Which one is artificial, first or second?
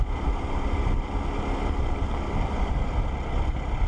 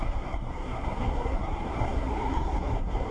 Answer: second